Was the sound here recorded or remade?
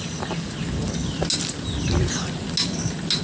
recorded